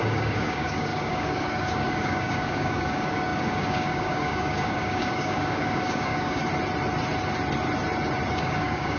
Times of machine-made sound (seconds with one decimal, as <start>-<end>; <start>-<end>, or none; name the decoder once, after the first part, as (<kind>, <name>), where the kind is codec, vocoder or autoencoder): 0.0-6.4 (codec, DAC); 8.3-9.0